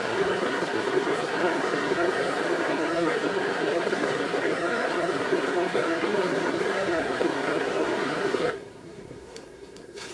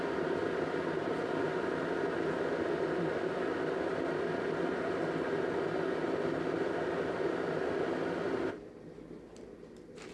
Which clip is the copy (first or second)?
first